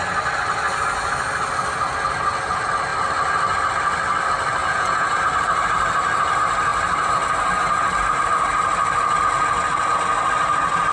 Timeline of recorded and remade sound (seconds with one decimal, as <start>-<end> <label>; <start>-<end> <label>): 0.0-4.6 recorded; 4.6-5.2 remade; 5.2-10.9 recorded